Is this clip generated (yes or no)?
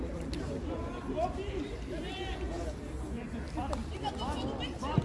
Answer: no